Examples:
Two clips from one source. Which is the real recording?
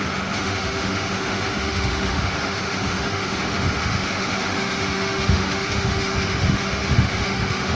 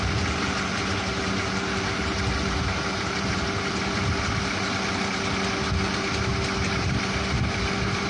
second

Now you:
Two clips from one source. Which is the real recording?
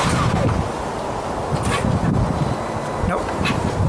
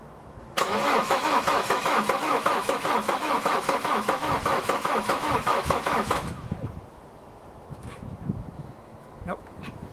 first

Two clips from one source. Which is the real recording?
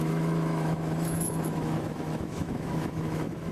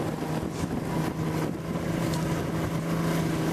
second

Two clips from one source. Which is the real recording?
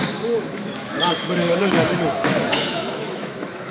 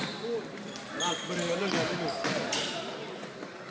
second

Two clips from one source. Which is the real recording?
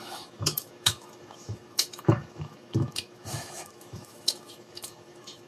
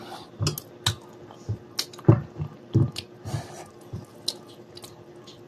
second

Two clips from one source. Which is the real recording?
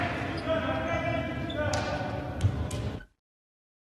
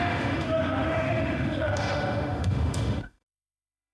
first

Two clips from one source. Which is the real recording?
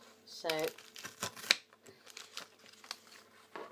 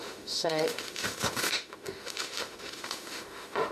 first